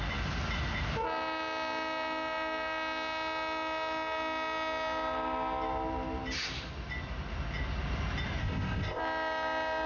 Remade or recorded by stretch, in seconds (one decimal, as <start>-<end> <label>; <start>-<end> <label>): 0.0-8.4 recorded; 8.4-9.0 remade; 9.0-9.9 recorded